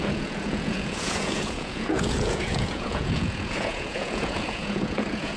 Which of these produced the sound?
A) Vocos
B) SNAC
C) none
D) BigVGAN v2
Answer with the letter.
A